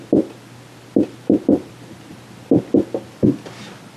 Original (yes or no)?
yes